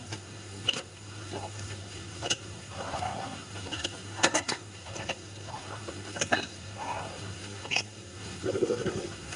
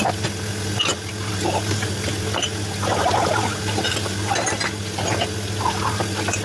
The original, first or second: second